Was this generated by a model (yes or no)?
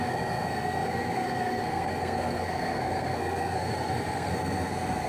yes